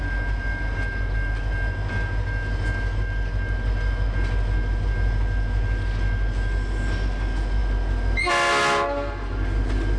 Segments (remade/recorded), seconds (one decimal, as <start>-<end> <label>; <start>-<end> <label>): 0.0-10.0 recorded